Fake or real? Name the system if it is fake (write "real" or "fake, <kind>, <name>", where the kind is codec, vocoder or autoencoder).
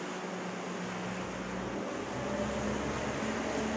real